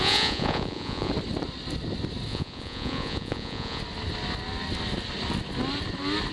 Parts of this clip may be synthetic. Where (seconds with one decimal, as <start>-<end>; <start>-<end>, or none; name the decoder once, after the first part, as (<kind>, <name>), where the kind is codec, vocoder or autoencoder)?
0.0-1.1 (vocoder, Vocos); 2.3-3.8